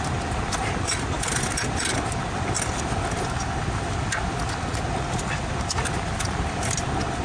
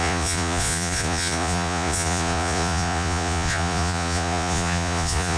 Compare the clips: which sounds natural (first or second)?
first